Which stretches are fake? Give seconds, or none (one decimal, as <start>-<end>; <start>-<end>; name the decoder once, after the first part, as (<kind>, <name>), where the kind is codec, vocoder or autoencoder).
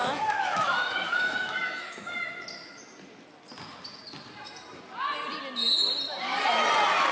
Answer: 0.0-2.4 (autoencoder, DAC-VAE)